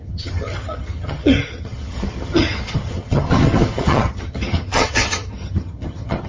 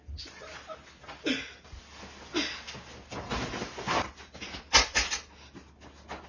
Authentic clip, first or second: second